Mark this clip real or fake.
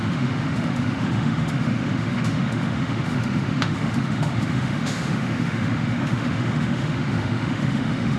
fake